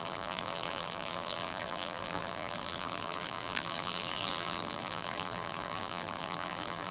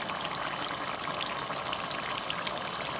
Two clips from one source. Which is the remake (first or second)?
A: first